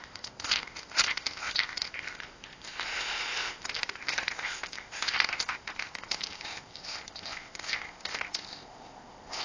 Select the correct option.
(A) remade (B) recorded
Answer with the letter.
A